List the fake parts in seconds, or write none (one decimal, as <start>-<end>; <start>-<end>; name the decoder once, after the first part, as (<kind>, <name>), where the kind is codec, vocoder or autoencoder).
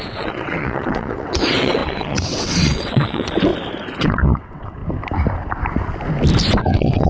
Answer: 0.0-3.5 (vocoder, WaveNeXt); 4.0-4.8; 6.5-7.1